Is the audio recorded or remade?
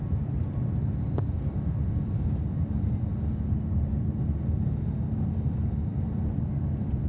recorded